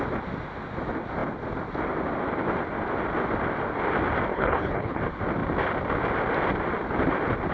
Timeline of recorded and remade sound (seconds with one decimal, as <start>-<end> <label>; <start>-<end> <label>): 0.0-4.3 recorded; 4.3-5.0 remade; 5.0-7.5 recorded